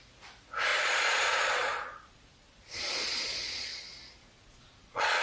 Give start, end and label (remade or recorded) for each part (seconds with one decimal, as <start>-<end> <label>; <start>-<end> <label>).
0.0-0.7 recorded; 0.7-3.8 remade; 3.8-4.2 recorded; 4.2-5.2 remade